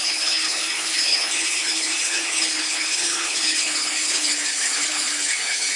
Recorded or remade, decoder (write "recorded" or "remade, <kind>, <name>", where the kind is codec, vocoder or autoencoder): remade, codec, HILCodec